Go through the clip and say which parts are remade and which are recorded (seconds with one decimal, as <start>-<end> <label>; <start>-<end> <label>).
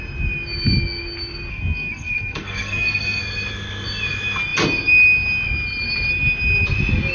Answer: 0.0-1.5 recorded; 1.5-3.2 remade; 3.2-7.1 recorded